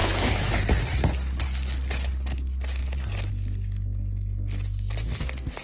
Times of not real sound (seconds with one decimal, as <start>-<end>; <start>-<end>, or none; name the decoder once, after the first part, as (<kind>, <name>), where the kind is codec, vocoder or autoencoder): 0.0-0.5 (autoencoder, DAC-VAE)